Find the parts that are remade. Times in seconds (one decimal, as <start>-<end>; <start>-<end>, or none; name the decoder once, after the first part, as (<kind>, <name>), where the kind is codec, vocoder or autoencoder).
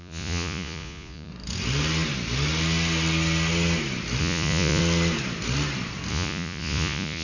0.0-1.3 (vocoder, Vocos); 4.2-4.8; 6.1-7.2